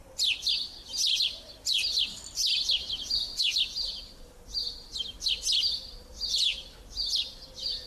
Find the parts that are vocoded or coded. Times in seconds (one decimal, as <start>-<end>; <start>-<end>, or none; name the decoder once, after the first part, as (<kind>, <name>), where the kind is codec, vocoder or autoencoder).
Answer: none